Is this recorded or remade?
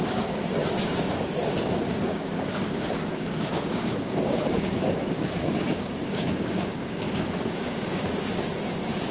remade